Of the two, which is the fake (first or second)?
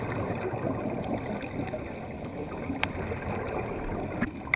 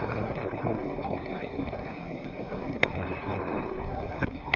second